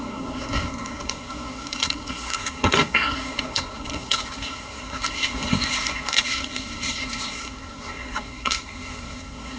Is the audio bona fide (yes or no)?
no